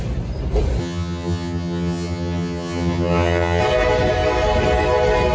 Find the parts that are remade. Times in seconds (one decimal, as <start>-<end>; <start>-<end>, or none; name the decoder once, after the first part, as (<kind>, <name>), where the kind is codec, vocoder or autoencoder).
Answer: 0.8-3.6 (vocoder, HiFi-GAN)